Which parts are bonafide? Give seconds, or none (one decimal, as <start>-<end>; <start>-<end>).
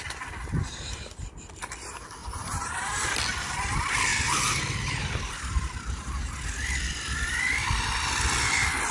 0.0-2.2; 3.2-4.1; 5.0-8.9